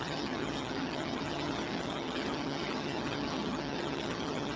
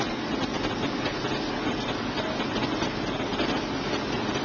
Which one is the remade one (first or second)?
first